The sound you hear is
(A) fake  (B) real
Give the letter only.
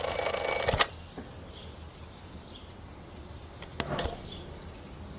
B